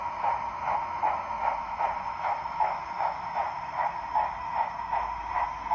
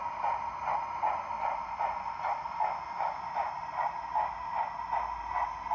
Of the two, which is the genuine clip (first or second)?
second